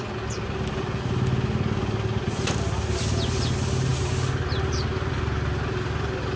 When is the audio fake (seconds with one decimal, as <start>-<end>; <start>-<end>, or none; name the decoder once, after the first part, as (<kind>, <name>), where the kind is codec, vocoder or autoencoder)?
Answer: none